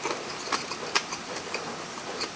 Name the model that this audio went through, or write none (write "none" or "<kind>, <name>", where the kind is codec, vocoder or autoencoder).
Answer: none